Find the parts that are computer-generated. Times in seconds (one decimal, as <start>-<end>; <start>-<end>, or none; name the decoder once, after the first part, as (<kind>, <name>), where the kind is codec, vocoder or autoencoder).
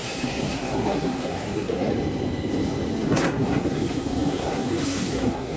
0.0-1.9 (codec, SNAC); 3.0-5.6